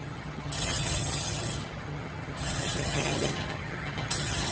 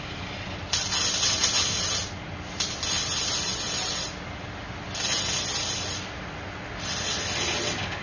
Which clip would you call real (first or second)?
second